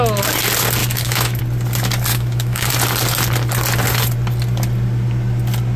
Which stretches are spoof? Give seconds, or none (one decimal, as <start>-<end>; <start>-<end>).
0.8-1.4; 2.1-2.7

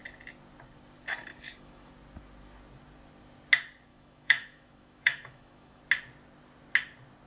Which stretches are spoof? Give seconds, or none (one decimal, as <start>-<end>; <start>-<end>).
1.3-1.9; 3.9-5.8

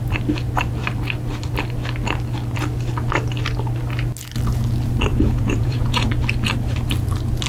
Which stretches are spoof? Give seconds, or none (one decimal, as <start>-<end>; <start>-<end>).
5.1-6.1